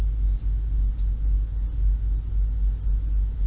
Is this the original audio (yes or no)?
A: yes